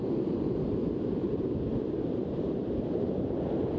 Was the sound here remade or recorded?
recorded